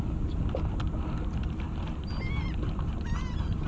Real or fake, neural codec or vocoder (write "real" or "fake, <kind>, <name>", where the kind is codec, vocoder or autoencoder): real